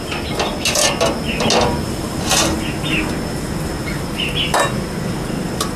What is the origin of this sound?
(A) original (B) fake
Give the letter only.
A